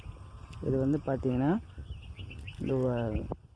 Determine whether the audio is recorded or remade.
remade